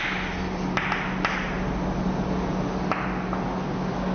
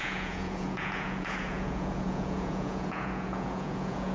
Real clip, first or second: first